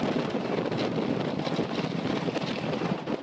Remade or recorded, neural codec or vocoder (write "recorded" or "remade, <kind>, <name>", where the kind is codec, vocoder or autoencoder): recorded